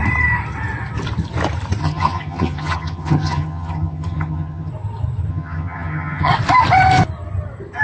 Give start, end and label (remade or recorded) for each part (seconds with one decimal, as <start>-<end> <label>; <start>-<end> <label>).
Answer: 0.0-1.8 recorded; 1.8-4.7 remade; 4.7-5.3 recorded; 5.3-6.3 remade; 6.3-7.8 recorded